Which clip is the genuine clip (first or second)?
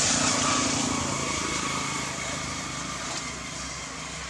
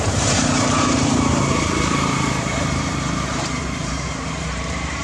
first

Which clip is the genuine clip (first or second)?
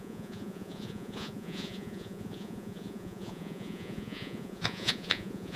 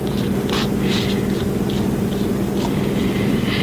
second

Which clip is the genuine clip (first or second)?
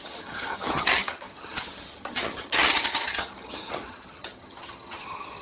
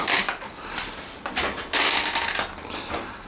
second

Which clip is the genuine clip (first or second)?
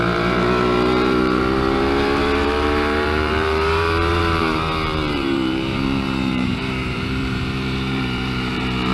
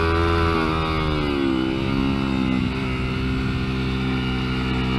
second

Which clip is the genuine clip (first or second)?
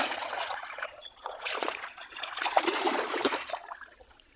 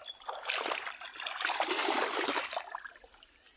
second